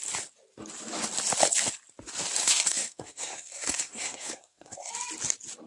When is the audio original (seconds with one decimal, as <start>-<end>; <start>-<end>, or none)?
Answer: 0.0-2.4; 4.9-5.7